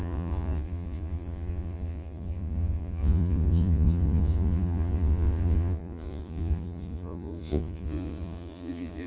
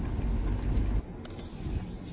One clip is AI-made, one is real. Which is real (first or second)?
second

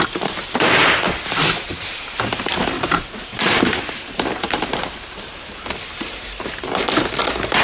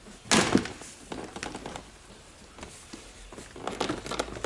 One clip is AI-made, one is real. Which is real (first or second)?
second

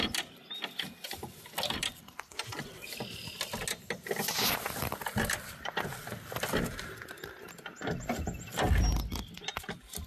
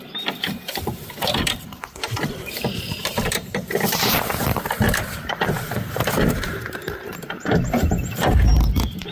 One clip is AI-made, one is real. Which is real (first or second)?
first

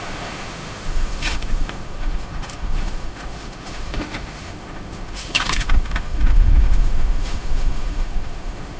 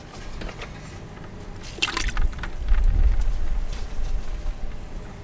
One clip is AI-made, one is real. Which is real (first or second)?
second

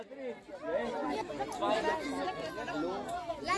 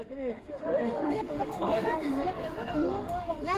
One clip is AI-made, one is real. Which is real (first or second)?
first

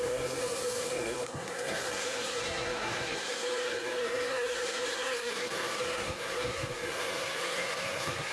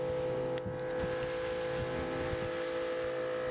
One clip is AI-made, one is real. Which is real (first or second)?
second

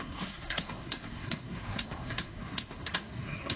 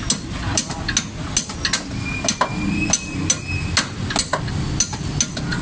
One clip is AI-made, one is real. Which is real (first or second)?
second